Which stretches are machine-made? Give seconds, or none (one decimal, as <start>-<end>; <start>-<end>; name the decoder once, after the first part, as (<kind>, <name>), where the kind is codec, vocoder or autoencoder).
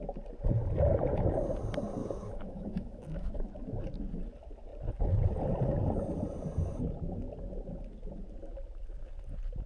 2.0-3.3 (autoencoder, DAC-VAE)